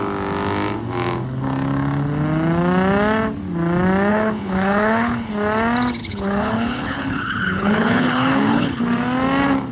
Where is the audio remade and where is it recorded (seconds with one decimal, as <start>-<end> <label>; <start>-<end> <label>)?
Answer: 0.0-4.1 recorded; 4.1-5.3 remade; 5.3-6.0 recorded; 6.0-8.8 remade; 8.8-9.7 recorded